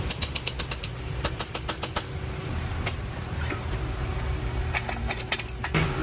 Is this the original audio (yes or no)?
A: yes